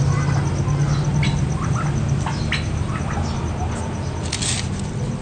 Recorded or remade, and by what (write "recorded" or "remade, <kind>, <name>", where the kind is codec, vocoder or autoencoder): recorded